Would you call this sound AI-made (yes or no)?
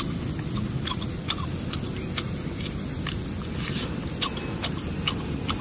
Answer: no